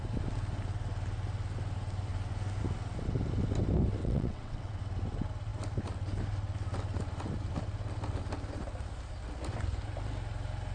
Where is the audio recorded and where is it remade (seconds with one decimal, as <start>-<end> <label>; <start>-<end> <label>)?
0.0-4.0 recorded; 4.0-4.8 remade; 4.8-10.7 recorded